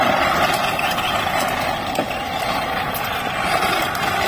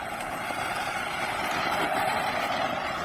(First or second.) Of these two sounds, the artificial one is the second